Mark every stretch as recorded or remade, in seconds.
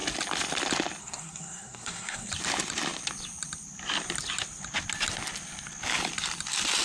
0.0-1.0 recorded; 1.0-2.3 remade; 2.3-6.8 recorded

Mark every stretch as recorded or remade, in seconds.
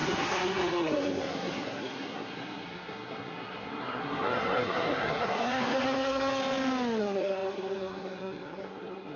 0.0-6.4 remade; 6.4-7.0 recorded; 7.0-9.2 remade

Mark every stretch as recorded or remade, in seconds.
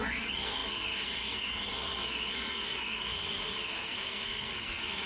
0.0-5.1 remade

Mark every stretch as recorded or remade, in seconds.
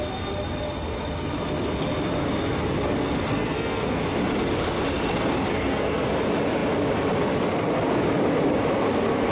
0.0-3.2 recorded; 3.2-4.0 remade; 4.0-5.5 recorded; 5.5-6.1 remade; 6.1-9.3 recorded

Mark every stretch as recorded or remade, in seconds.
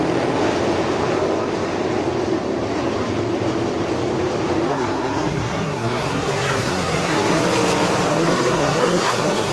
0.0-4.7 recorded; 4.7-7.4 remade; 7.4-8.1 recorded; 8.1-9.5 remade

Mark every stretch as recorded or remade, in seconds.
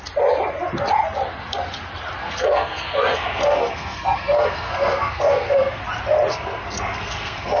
0.0-2.2 recorded; 2.2-5.8 remade; 5.8-6.3 recorded; 6.3-7.6 remade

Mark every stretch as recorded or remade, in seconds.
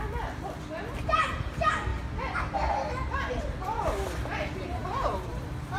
0.0-5.8 recorded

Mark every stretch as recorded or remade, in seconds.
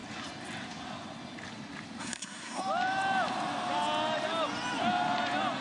0.0-2.0 recorded; 2.0-2.6 remade; 2.6-5.6 recorded